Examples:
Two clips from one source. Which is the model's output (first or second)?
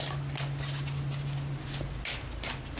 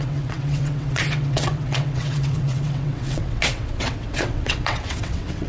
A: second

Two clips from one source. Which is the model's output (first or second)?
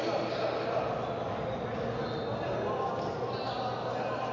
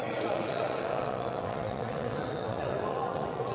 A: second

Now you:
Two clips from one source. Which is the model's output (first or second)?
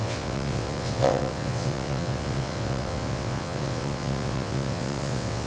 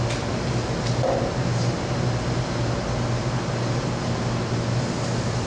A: first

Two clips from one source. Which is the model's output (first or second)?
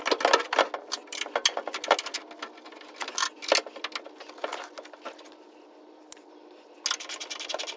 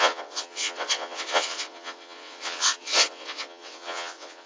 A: second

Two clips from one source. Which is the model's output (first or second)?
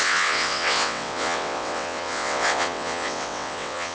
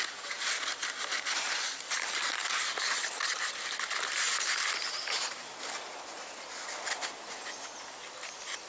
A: first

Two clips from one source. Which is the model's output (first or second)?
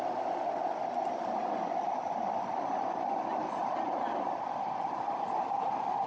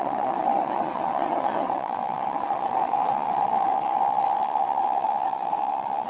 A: second